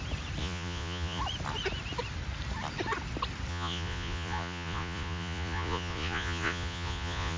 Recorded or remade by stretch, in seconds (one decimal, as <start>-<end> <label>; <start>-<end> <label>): 0.0-0.4 recorded; 0.4-1.2 remade; 1.2-3.5 recorded; 3.5-7.4 remade